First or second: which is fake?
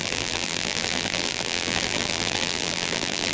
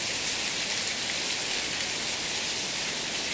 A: first